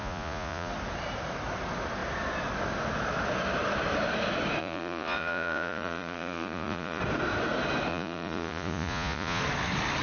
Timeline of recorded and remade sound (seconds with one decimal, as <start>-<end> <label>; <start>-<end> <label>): 0.0-0.7 remade; 0.7-4.6 recorded; 4.6-7.0 remade; 7.0-7.9 recorded; 7.9-9.4 remade; 9.4-10.0 recorded